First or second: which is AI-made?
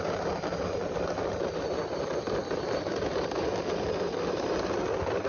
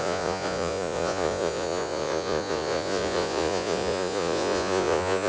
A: second